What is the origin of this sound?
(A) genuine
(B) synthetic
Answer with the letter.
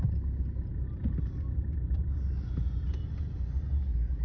A